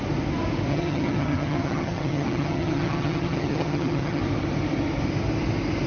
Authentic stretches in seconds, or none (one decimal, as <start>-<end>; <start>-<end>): 0.0-0.7; 4.2-5.9

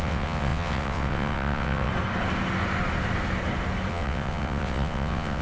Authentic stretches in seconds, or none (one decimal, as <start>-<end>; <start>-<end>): 1.9-3.9

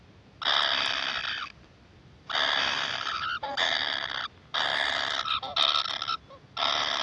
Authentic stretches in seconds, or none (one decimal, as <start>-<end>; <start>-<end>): 0.0-7.0